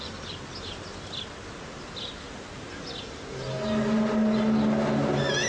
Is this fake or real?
real